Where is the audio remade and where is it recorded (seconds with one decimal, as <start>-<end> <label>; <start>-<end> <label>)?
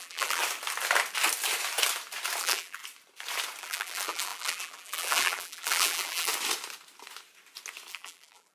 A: 0.0-0.4 remade; 0.4-2.4 recorded; 2.4-2.8 remade; 2.8-3.6 recorded; 3.6-6.3 remade; 6.3-7.9 recorded; 7.9-8.5 remade